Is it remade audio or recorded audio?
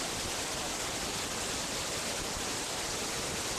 recorded